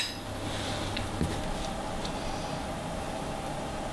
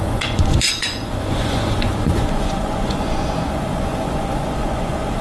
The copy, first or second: second